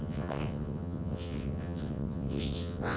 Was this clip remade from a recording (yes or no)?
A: yes